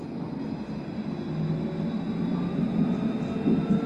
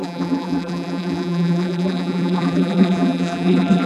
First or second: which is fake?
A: second